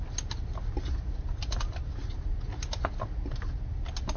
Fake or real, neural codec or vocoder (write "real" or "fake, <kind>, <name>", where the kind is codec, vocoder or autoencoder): real